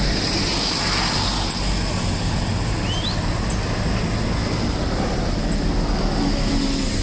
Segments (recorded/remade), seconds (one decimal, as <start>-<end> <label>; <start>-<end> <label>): 0.0-7.0 recorded